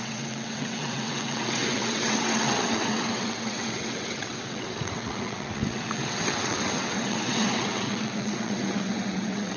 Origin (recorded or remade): remade